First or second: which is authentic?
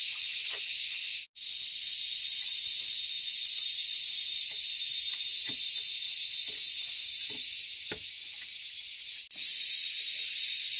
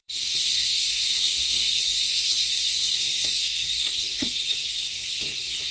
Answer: first